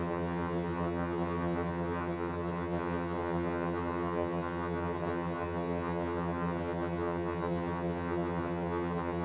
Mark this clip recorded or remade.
remade